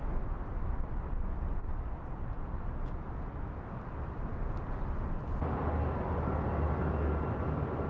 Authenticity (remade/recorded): recorded